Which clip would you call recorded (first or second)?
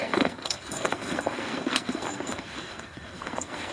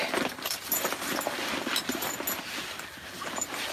second